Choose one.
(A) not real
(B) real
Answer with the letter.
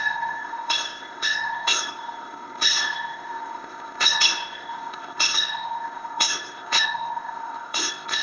A